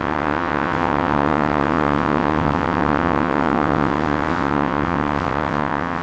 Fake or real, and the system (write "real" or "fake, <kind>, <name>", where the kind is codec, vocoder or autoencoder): fake, vocoder, WaveNeXt